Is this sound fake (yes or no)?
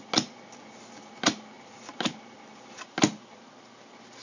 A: no